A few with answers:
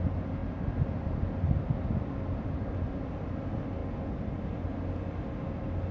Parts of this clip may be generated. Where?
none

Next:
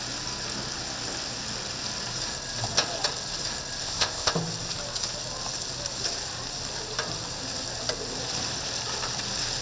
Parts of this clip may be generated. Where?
3.8-4.3 (codec, ZipCodec)